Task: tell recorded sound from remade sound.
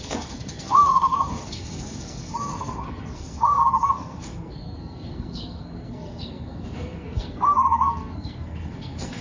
remade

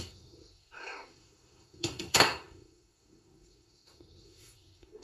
remade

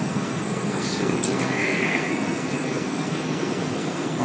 remade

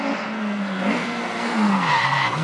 remade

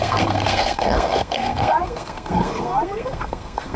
remade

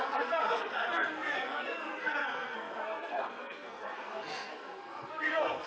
remade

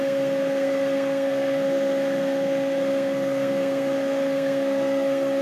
remade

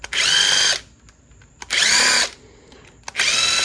recorded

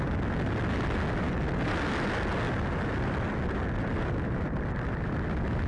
recorded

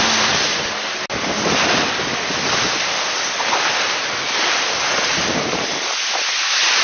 recorded